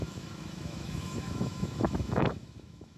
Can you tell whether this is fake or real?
fake